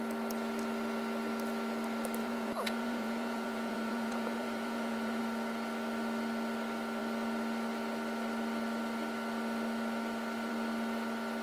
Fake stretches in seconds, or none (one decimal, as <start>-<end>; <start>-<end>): 2.2-5.2